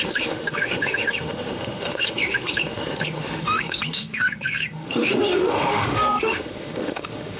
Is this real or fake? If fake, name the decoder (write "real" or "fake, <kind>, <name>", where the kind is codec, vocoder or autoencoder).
fake, autoencoder, DAC-VAE